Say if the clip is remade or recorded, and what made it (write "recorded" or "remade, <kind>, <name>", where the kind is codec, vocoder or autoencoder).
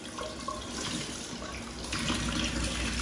recorded